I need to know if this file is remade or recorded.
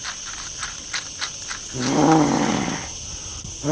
recorded